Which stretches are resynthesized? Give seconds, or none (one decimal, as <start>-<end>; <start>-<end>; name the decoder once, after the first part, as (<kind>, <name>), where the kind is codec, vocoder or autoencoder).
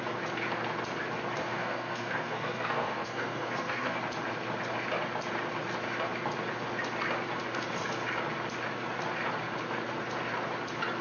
1.4-4.0 (codec, SNAC)